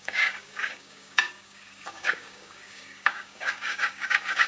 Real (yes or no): no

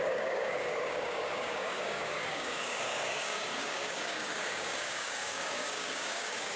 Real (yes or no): no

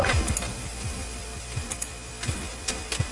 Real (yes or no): yes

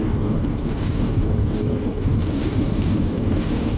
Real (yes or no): no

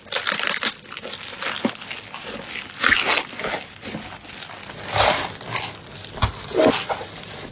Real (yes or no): yes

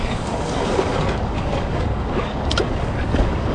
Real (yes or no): no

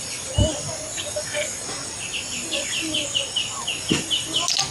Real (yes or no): yes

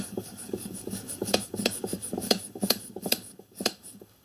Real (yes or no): no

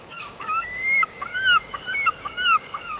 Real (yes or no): no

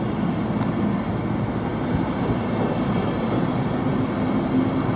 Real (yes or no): yes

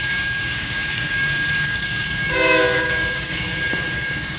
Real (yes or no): no